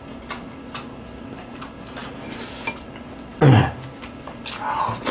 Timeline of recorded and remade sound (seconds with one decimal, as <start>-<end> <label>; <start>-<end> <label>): 0.0-5.1 recorded